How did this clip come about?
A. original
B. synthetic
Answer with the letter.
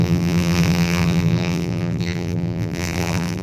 B